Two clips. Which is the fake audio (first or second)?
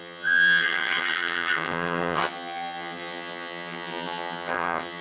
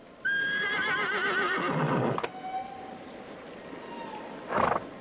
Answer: first